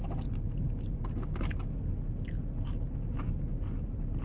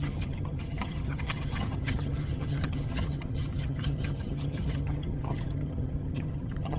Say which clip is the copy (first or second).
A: second